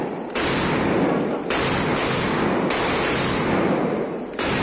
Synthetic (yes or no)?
no